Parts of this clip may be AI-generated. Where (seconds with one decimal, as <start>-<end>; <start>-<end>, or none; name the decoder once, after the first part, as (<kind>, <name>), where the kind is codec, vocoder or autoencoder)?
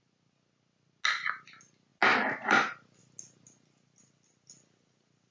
none